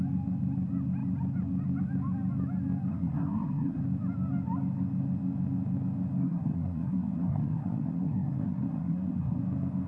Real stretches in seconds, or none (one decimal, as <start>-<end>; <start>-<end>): 0.0-2.9; 3.8-6.2; 9.4-9.9